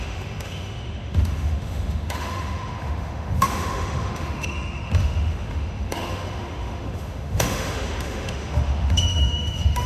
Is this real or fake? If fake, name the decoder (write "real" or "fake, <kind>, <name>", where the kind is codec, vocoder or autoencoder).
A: fake, autoencoder, DAC-VAE